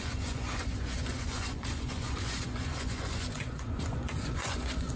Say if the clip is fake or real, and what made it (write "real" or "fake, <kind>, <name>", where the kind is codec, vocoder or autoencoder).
fake, vocoder, Vocos